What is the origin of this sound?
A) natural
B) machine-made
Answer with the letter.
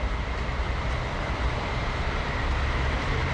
B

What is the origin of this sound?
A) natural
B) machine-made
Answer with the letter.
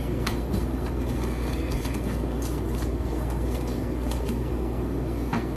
B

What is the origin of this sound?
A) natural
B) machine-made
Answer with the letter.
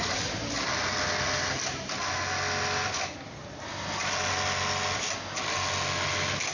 A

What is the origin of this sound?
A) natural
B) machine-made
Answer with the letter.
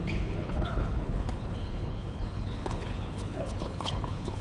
B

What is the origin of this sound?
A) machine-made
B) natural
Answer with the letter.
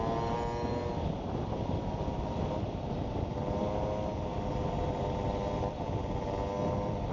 B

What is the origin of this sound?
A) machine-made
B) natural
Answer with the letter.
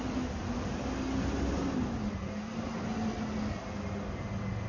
B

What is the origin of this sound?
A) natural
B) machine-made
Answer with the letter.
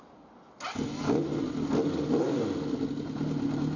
A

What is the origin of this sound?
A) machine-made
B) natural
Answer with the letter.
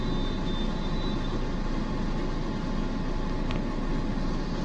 B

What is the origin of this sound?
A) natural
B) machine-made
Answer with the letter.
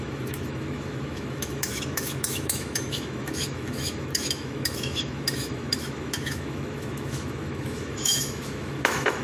B